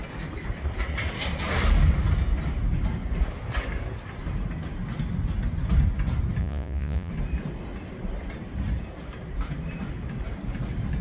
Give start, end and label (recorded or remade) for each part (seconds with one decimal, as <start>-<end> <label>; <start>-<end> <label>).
0.0-6.4 recorded; 6.4-7.1 remade; 7.1-11.0 recorded